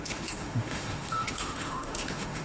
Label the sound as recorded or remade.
remade